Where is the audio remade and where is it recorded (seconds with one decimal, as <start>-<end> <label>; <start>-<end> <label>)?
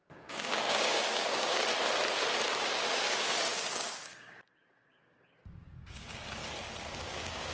0.0-1.7 remade; 1.7-2.6 recorded; 2.6-6.4 remade; 6.4-7.0 recorded; 7.0-7.5 remade